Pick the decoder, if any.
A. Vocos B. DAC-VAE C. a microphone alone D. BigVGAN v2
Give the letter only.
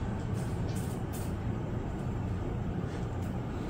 D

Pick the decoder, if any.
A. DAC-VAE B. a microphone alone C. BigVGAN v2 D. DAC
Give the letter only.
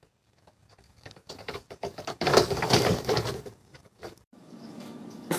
D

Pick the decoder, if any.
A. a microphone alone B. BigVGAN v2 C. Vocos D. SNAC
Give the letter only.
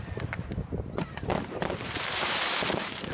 B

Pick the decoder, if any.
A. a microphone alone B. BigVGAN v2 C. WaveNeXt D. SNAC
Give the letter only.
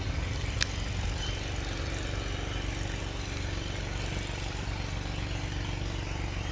A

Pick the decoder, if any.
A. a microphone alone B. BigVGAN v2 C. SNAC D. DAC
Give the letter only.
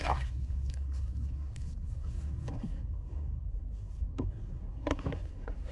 C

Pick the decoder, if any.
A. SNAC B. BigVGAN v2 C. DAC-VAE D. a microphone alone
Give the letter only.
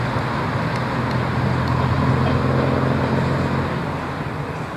D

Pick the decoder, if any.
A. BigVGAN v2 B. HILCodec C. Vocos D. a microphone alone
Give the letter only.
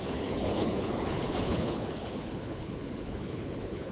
B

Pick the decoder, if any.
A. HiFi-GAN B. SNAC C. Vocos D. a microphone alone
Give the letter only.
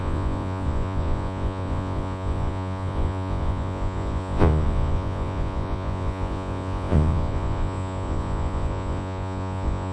C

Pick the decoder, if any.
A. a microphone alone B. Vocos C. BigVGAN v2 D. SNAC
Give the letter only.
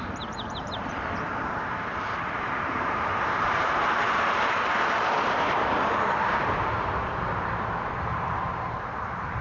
C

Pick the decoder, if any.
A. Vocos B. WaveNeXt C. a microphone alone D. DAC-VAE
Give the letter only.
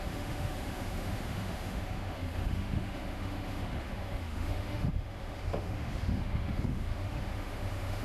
D